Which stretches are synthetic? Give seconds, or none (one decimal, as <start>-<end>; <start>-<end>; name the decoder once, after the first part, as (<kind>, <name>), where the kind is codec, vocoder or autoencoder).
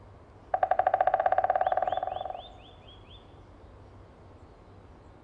none